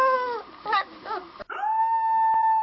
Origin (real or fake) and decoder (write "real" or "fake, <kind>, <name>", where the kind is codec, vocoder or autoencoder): real